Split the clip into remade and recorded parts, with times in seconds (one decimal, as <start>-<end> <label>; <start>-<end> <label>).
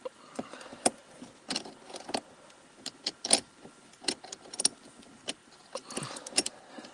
0.0-5.4 recorded; 5.4-6.0 remade; 6.0-6.9 recorded